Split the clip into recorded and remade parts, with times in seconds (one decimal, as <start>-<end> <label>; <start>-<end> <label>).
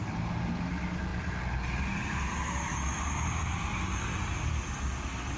0.0-5.4 recorded